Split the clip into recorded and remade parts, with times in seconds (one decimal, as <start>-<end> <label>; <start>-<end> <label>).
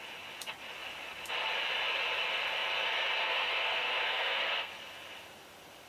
0.0-3.2 recorded; 3.2-4.7 remade; 4.7-5.9 recorded